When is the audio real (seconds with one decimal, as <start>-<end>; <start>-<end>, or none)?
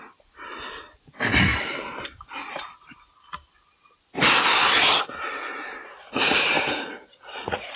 0.0-5.8